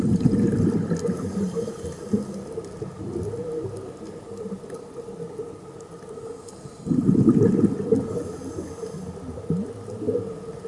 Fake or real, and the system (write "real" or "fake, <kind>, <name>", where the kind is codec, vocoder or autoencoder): real